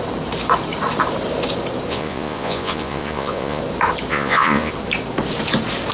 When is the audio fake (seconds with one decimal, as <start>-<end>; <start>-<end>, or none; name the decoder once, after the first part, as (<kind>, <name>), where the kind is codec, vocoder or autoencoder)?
1.9-3.6 (vocoder, Vocos); 4.1-4.7